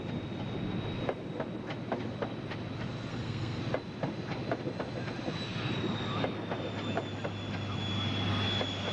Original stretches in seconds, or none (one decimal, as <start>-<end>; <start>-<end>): 0.0-3.1; 3.6-8.9